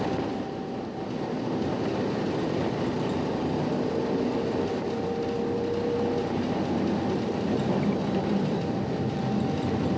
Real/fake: real